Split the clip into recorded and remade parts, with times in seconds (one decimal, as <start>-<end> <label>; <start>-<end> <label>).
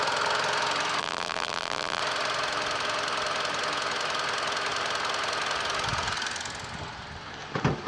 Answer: 0.0-1.0 recorded; 1.0-2.0 remade; 2.0-7.9 recorded